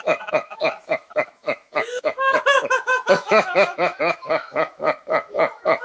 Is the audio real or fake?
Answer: fake